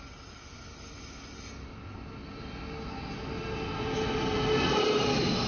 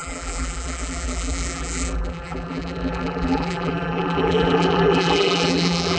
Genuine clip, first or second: first